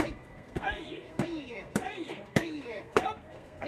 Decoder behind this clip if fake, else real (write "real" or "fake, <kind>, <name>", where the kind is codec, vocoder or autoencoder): fake, codec, SNAC